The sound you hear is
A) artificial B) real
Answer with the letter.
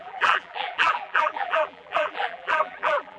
A